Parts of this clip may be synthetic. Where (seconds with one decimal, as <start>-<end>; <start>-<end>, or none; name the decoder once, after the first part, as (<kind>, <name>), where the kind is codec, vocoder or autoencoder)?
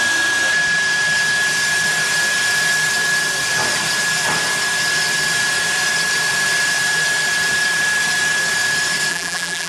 9.1-9.7 (vocoder, BigVGAN v2)